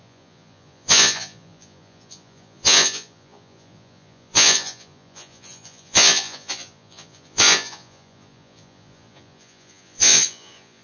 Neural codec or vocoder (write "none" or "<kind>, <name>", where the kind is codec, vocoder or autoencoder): vocoder, Vocos